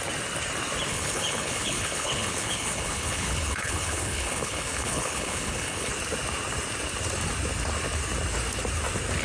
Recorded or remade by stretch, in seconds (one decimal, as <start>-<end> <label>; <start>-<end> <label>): 0.0-0.9 recorded; 0.9-5.9 remade; 5.9-9.2 recorded